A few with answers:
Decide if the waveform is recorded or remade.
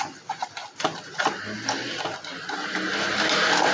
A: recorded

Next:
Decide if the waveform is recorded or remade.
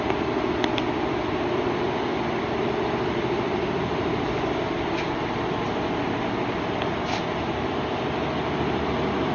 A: recorded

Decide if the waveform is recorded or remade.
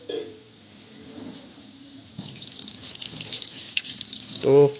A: recorded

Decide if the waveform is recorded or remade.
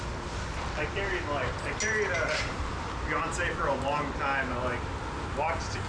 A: recorded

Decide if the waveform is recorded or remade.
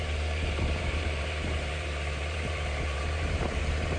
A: remade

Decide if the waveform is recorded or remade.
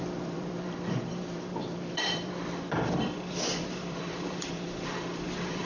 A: remade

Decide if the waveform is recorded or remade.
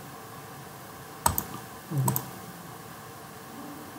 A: recorded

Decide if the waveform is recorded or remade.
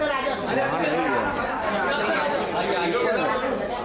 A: recorded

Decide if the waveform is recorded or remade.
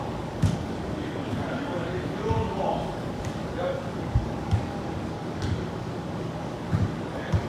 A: remade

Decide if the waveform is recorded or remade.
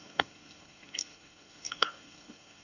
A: remade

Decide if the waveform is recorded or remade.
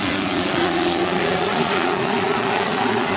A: remade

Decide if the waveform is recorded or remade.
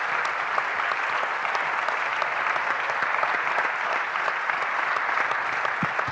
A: recorded